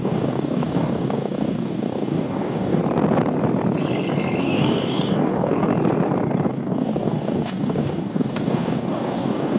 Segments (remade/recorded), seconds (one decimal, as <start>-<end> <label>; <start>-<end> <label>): 0.0-2.8 remade; 2.8-4.4 recorded; 4.4-5.7 remade; 5.7-6.5 recorded; 6.5-9.6 remade